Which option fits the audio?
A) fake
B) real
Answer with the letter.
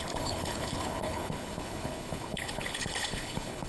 A